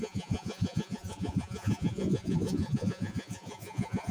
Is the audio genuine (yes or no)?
no